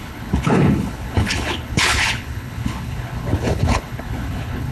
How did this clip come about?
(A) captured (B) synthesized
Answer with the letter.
B